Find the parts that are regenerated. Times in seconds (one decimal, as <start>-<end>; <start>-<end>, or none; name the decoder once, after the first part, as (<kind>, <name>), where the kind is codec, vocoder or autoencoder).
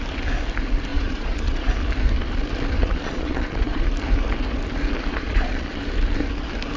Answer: 0.9-1.7 (vocoder, Vocos); 2.8-3.8; 5.1-5.8